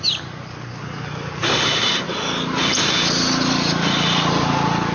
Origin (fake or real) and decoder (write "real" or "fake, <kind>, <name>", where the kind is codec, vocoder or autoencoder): real